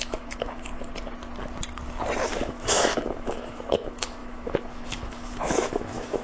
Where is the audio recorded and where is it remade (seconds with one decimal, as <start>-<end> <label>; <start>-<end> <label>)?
0.0-0.7 remade; 0.7-2.3 recorded; 2.3-6.2 remade

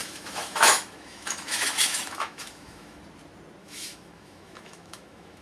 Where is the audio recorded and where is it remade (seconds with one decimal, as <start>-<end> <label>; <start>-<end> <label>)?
0.0-3.0 remade; 3.0-3.6 recorded; 3.6-5.4 remade

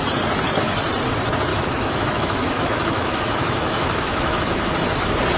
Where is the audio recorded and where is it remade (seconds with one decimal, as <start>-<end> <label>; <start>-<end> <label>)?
0.0-1.5 recorded; 1.5-4.7 remade; 4.7-5.4 recorded

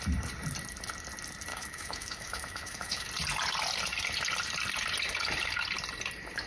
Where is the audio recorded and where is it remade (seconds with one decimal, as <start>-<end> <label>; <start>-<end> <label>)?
0.0-1.5 recorded; 1.5-3.1 remade; 3.1-6.5 recorded

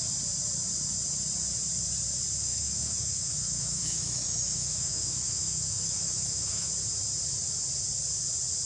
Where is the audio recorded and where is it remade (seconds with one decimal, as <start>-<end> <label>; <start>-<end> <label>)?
0.0-2.5 recorded; 2.5-6.7 remade; 6.7-8.7 recorded

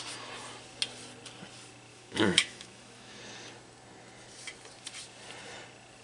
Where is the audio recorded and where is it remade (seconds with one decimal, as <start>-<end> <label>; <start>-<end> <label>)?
0.0-1.9 recorded; 1.9-3.2 remade; 3.2-6.0 recorded

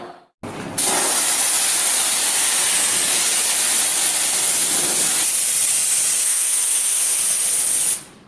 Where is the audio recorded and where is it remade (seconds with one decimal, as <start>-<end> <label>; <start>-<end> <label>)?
0.0-6.2 recorded; 6.2-7.2 remade; 7.2-8.3 recorded